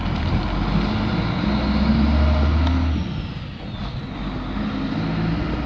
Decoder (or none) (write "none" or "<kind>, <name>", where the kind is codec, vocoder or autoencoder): none